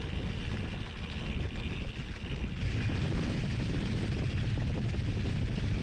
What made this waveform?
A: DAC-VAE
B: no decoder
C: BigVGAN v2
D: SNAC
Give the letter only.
B